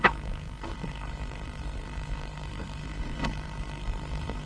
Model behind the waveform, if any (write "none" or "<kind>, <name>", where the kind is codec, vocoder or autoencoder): codec, SNAC